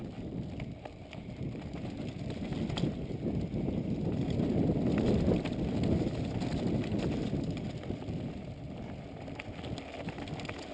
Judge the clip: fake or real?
real